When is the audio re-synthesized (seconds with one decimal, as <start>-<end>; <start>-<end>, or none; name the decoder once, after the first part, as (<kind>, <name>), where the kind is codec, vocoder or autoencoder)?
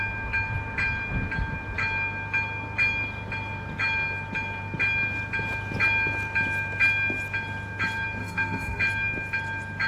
8.2-8.8 (codec, SNAC)